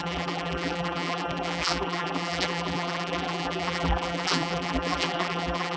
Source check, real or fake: fake